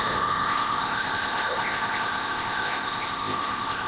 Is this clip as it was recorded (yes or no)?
no